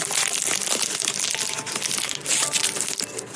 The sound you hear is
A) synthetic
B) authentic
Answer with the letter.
B